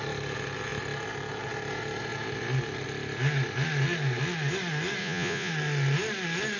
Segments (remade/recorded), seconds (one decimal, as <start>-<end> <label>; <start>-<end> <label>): 0.0-5.0 recorded; 5.0-5.5 remade; 5.5-6.6 recorded